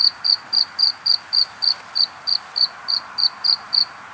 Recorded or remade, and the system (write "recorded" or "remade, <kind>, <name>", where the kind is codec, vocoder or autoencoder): recorded